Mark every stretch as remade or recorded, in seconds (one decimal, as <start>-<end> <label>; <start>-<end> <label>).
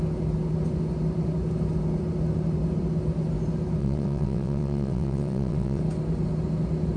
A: 0.0-3.8 recorded; 3.8-5.8 remade; 5.8-7.0 recorded